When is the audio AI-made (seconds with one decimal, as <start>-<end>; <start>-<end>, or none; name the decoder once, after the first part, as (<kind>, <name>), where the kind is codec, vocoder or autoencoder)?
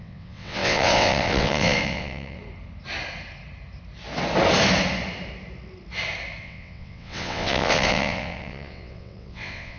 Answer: 0.0-2.4 (vocoder, WaveNeXt); 6.4-9.8